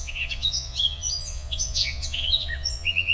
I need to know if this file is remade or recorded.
remade